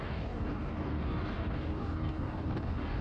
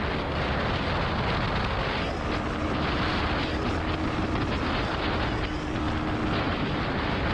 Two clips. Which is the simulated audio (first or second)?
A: first